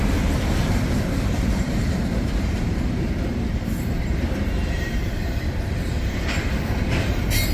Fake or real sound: fake